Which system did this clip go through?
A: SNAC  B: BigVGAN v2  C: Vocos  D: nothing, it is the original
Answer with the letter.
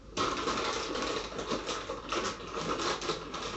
D